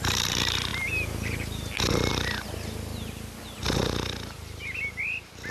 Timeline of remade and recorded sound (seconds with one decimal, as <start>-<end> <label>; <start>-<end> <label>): 0.0-5.5 recorded